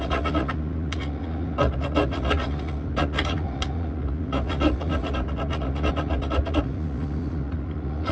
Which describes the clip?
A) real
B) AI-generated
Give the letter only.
B